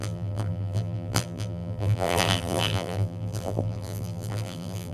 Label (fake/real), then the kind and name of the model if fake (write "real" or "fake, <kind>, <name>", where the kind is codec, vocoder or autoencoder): fake, vocoder, BigVGAN v2